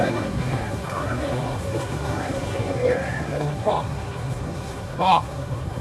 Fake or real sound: fake